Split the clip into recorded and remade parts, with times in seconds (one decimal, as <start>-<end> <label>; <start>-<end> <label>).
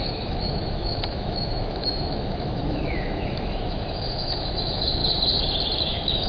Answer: 0.0-5.0 remade; 5.0-5.8 recorded; 5.8-6.3 remade